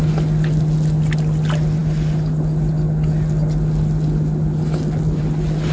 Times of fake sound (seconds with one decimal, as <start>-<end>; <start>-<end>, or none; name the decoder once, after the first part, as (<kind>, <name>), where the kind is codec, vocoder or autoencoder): none